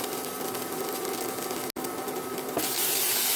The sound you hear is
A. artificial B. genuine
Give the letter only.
B